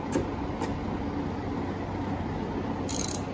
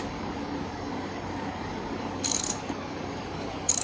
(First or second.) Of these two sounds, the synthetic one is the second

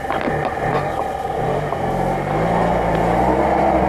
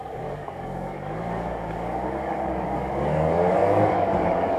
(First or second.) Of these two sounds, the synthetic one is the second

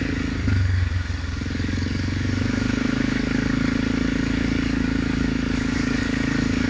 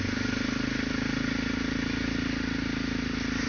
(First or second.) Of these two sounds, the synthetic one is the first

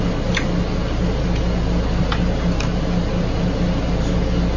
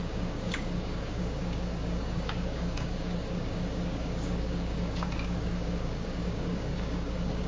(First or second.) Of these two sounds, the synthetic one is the second